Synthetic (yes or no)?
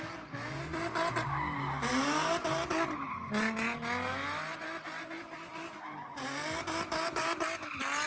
no